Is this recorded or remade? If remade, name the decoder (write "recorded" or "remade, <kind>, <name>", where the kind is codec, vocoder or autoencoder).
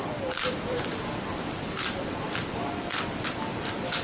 remade, vocoder, BigVGAN v2